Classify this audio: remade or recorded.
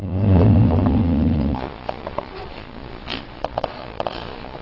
remade